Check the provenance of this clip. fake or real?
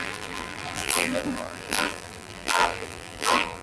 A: fake